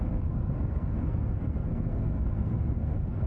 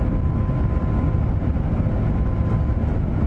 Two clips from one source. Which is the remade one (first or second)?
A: first